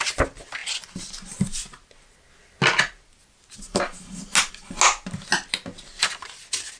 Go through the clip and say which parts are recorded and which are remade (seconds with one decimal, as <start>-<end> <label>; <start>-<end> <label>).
0.0-6.8 recorded